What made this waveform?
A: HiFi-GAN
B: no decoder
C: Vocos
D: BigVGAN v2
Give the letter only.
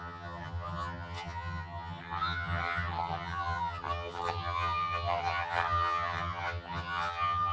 A